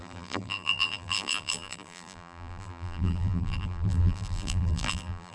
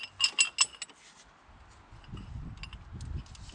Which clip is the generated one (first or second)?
first